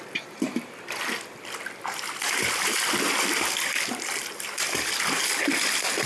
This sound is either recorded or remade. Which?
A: recorded